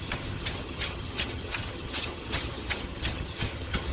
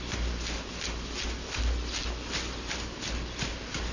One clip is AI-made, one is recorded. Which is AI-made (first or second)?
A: first